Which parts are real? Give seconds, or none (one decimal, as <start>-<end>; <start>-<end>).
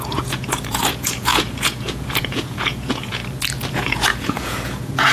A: 3.2-3.7